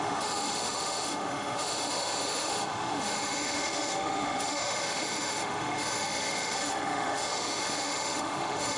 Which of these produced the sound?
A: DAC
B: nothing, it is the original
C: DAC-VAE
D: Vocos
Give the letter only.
C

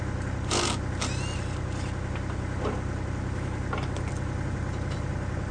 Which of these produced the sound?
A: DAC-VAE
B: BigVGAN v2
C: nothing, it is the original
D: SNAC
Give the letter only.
C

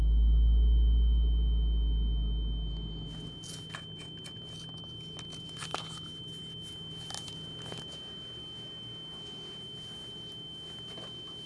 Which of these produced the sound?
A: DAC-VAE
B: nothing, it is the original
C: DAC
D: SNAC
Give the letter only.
B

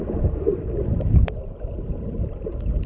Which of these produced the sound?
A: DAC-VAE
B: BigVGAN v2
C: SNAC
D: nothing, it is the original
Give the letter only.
D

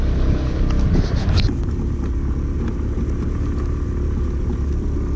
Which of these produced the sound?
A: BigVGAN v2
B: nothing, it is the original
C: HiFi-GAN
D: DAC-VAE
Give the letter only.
B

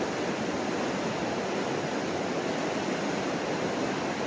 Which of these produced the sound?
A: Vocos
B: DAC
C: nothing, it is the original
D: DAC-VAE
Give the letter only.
C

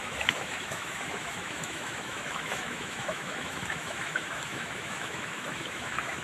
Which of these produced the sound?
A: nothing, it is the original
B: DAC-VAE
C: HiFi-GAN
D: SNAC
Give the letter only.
B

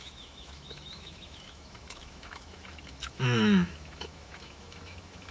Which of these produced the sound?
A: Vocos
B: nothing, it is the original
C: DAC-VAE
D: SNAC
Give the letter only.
C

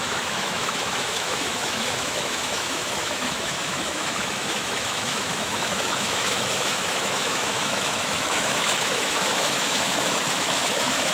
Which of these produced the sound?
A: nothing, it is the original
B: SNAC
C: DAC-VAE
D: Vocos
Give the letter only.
C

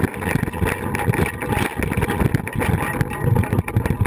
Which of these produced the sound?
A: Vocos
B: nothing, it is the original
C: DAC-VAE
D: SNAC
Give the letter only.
B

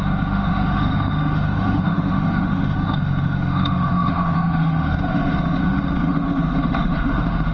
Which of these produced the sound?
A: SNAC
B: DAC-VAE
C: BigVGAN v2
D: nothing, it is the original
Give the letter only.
B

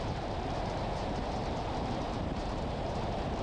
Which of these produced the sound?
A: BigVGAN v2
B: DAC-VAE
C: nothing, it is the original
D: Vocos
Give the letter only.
C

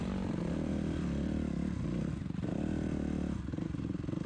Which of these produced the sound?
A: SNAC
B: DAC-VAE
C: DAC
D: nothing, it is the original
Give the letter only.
D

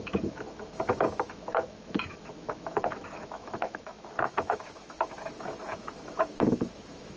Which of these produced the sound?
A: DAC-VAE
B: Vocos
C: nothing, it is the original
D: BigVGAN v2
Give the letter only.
A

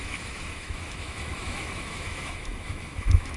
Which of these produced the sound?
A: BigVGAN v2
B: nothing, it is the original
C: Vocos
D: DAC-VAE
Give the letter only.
D